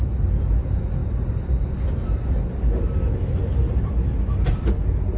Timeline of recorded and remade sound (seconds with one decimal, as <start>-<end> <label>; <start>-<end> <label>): 0.0-5.2 recorded